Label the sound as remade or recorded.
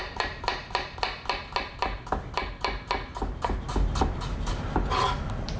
recorded